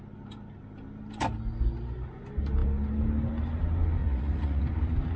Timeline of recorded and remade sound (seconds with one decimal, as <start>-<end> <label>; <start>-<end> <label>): 0.0-4.0 recorded; 4.0-4.6 remade; 4.6-5.2 recorded

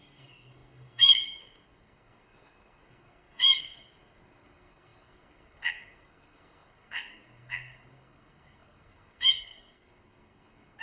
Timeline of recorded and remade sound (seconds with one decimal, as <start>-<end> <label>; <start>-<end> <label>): 0.0-10.8 remade

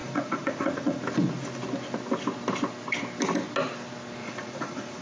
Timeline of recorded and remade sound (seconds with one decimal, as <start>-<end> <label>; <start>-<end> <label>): 0.0-1.0 remade; 1.0-4.2 recorded; 4.2-5.0 remade

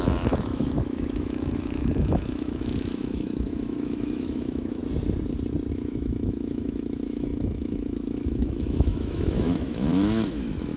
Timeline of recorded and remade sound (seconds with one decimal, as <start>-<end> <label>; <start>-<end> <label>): 0.0-4.8 remade; 4.8-5.7 recorded; 5.7-10.8 remade

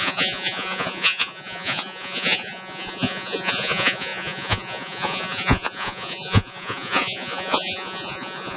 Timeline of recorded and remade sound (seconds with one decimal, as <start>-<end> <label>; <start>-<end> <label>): 0.0-8.6 remade

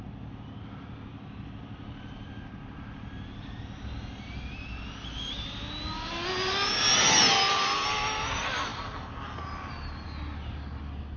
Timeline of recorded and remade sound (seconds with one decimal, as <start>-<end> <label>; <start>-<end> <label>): 0.0-11.2 recorded